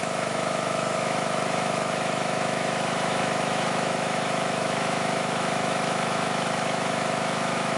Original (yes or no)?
no